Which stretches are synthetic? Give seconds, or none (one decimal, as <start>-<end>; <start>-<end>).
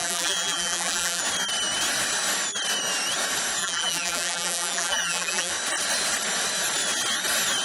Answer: 0.0-1.2; 3.6-5.5